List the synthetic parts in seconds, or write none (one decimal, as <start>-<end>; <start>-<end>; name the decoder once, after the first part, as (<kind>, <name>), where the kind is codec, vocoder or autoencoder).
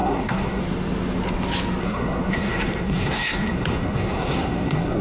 0.0-0.6 (codec, SNAC); 1.8-5.0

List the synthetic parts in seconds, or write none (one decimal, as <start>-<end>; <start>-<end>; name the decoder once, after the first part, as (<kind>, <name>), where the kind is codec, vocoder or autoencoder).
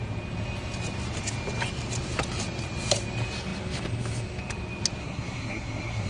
5.0-6.1 (codec, SNAC)